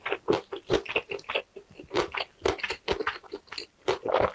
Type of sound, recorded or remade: recorded